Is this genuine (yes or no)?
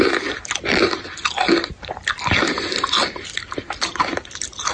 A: yes